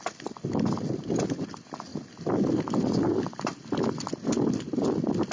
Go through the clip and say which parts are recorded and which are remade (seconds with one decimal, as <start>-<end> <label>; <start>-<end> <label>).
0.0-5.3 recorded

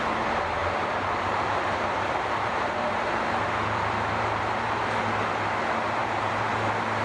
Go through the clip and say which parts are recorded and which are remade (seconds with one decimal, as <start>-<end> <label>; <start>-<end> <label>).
0.0-0.6 recorded; 0.6-4.8 remade; 4.8-6.0 recorded; 6.0-6.5 remade; 6.5-7.0 recorded

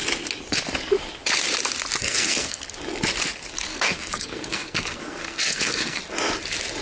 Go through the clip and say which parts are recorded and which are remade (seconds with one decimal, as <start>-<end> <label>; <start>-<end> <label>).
0.0-2.0 recorded; 2.0-2.6 remade; 2.6-3.7 recorded; 3.7-6.0 remade; 6.0-6.8 recorded